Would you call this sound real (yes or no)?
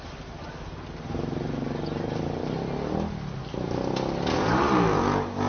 yes